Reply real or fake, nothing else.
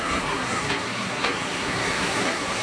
fake